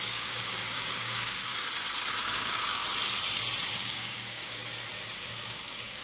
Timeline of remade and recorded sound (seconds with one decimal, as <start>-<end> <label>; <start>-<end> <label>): 0.0-1.5 remade; 1.5-2.2 recorded; 2.2-2.8 remade; 2.8-3.7 recorded; 3.7-4.6 remade; 4.6-5.2 recorded; 5.2-6.0 remade

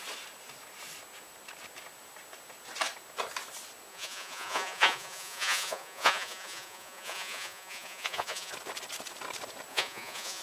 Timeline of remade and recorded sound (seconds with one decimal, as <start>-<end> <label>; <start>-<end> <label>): 0.0-3.9 recorded; 3.9-8.5 remade; 8.5-9.7 recorded; 9.7-10.4 remade